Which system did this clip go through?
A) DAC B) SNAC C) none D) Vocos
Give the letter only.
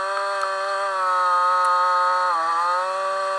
C